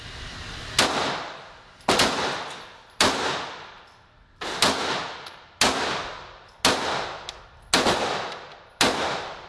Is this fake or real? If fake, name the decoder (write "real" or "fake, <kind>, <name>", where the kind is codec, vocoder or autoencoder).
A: real